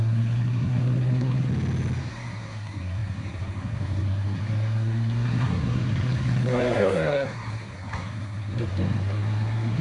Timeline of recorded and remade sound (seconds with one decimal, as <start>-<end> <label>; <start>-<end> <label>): 0.0-1.5 remade; 1.5-2.1 recorded; 2.1-9.8 remade